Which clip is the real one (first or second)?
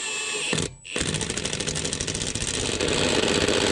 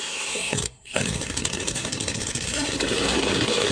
first